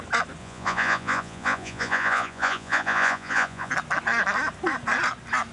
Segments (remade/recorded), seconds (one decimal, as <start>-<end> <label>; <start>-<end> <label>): 0.0-0.4 recorded; 0.4-3.7 remade; 3.7-5.5 recorded